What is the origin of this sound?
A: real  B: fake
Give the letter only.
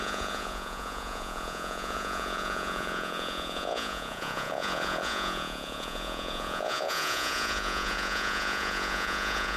B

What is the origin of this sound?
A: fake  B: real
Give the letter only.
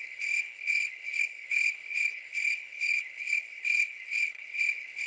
A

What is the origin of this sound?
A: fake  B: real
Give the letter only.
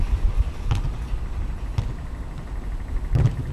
B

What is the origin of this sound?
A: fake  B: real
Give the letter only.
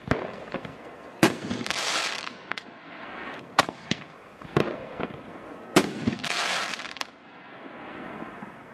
A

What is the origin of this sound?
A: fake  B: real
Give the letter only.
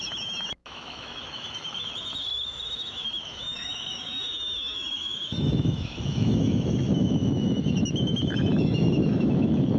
A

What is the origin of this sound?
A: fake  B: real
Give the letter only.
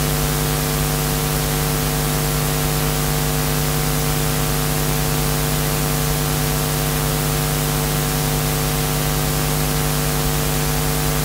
B